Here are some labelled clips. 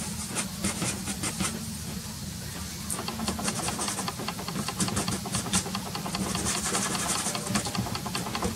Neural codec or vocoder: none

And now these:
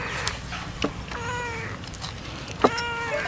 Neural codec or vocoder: none